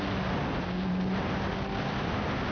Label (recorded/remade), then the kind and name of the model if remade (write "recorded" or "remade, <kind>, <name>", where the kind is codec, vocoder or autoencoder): recorded